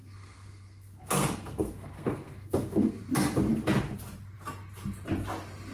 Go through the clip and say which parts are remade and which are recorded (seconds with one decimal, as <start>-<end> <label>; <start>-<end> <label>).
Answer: 0.0-3.0 remade; 3.0-5.7 recorded